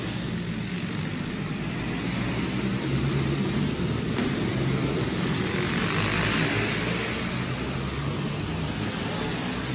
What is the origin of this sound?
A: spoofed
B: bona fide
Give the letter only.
B